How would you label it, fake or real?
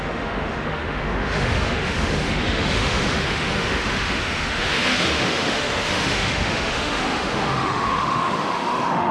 fake